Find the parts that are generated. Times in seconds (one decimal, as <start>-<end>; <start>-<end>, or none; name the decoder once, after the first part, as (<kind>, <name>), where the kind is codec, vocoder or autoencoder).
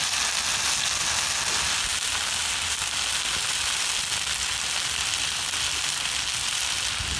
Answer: none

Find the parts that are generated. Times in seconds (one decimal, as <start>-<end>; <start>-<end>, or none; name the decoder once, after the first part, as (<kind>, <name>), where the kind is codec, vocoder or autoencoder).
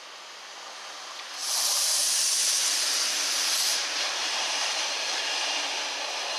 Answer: 1.4-5.2 (vocoder, BigVGAN v2)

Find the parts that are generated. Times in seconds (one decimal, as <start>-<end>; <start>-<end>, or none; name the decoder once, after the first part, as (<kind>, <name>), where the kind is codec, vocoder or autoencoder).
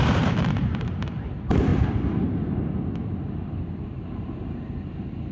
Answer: 0.0-1.7 (vocoder, BigVGAN v2); 3.8-5.3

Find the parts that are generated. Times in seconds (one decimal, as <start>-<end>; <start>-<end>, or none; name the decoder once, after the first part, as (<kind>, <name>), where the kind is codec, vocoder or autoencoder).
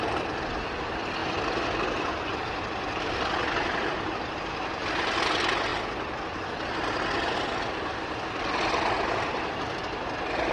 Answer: 1.2-3.0 (vocoder, BigVGAN v2)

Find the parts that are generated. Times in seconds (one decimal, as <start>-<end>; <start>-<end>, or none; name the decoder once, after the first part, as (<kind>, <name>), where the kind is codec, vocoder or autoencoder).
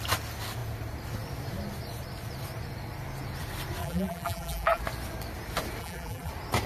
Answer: 3.8-4.8 (vocoder, BigVGAN v2); 5.8-6.3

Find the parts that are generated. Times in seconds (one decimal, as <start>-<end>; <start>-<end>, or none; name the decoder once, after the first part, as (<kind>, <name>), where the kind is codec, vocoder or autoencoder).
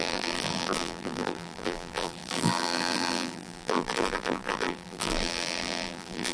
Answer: 0.0-6.3 (vocoder, BigVGAN v2)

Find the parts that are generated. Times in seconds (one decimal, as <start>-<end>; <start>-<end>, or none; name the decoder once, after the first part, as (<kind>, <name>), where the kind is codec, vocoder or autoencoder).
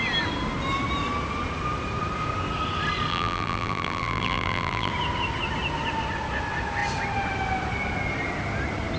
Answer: 3.1-4.9 (vocoder, BigVGAN v2)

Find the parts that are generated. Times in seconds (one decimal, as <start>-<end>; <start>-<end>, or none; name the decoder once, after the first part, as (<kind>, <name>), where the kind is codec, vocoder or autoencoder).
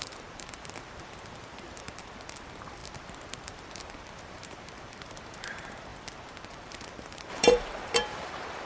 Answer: 0.0-5.9 (vocoder, BigVGAN v2); 6.4-8.7